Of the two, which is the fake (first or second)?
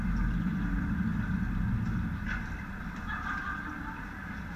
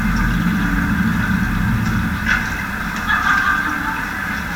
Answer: first